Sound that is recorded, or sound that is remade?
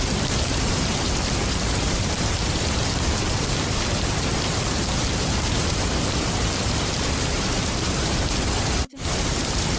remade